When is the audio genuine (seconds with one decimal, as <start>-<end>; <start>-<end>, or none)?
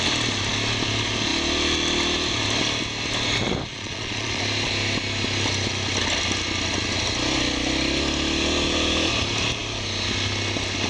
0.0-3.7; 4.4-10.9